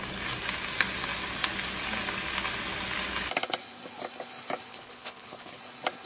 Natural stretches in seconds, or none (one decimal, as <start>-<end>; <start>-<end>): 0.0-4.7; 5.6-6.0